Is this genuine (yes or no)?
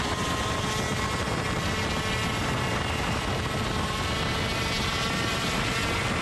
yes